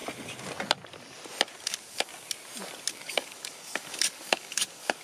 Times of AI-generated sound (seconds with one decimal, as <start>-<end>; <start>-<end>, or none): 1.6-2.1; 2.9-5.0